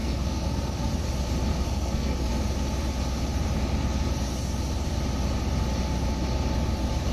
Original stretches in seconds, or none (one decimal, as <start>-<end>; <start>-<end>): 0.9-1.5; 2.3-7.1